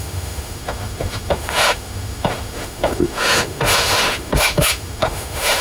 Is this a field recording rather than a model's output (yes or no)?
no